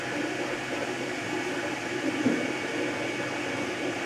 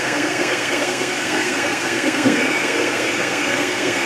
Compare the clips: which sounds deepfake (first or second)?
second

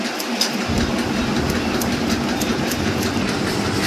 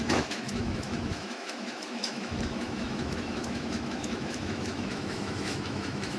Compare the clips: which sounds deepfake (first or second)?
second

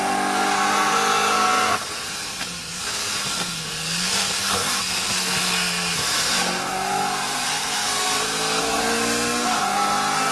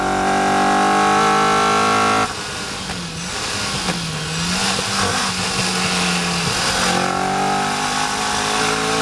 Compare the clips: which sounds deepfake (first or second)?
first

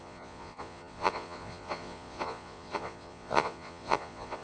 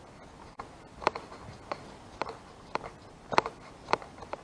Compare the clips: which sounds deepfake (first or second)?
first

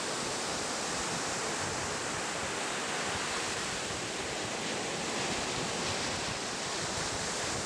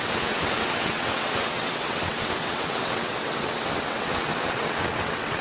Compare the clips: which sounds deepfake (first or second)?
second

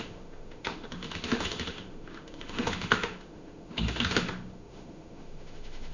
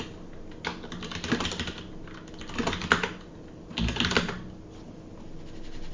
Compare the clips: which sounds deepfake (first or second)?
first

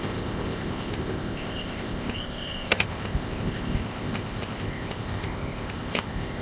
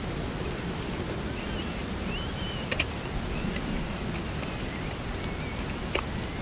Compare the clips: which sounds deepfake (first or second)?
first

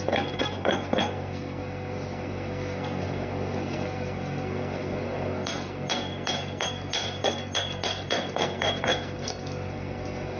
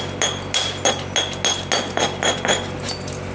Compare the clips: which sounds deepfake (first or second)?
first